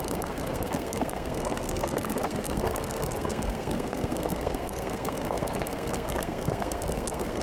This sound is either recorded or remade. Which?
remade